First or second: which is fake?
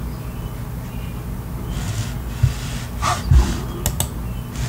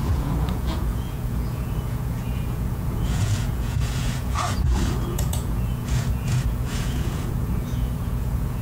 second